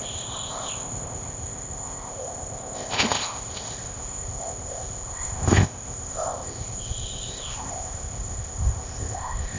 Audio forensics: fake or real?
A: fake